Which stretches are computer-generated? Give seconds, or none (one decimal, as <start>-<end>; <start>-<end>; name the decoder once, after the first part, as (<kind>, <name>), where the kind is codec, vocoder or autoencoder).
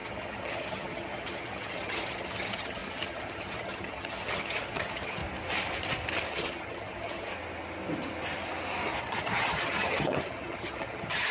0.0-5.2 (vocoder, HiFi-GAN); 6.3-7.3; 9.0-11.3